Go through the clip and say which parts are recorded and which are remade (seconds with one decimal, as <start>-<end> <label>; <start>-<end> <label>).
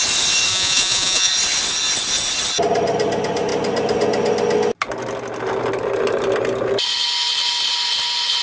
0.0-0.5 recorded; 0.5-1.3 remade; 1.3-8.4 recorded